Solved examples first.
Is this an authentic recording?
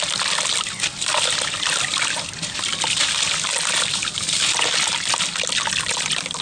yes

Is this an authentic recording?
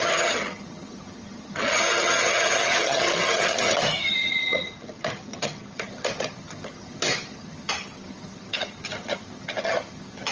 no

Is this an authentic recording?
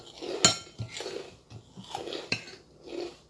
yes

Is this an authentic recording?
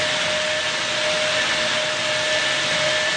yes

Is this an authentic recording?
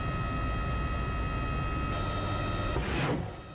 yes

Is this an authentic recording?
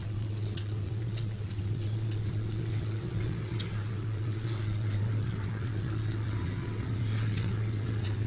no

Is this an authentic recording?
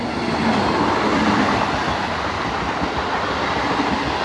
yes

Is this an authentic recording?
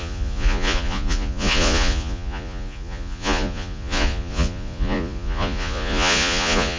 no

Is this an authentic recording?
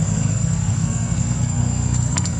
no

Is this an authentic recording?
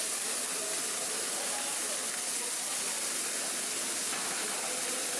yes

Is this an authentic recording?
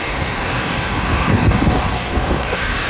no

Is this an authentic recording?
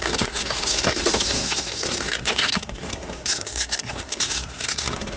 no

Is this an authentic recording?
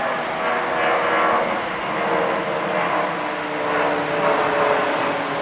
yes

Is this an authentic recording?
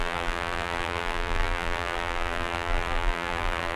no